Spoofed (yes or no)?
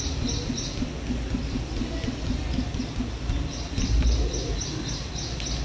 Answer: no